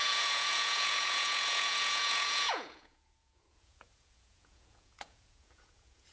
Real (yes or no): no